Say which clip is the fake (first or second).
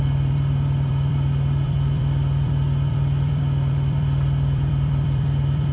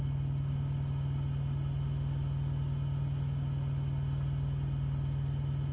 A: first